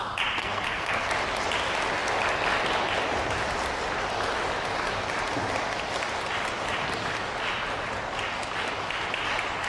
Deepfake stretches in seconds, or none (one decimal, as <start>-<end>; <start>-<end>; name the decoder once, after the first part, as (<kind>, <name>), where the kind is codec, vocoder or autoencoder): 0.4-1.1 (codec, SNAC)